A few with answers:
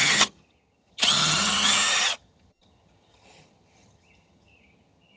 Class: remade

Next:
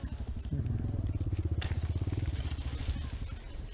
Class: recorded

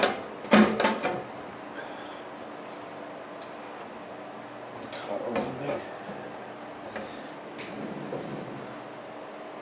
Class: recorded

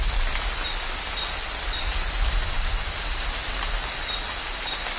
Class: recorded